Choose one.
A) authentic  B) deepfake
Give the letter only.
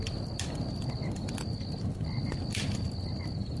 A